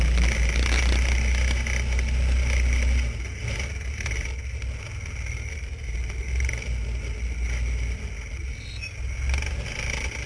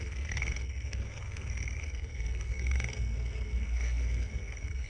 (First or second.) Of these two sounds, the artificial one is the second